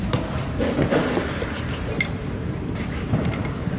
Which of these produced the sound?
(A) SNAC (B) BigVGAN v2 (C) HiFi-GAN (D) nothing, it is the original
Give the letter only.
B